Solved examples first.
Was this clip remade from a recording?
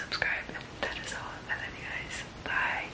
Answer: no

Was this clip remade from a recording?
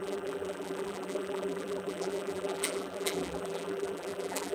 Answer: yes